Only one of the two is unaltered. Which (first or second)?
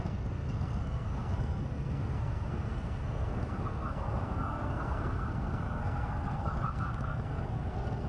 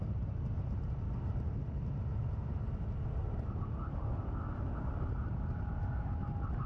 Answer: second